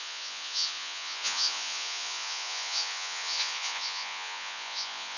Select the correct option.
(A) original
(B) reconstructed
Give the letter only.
B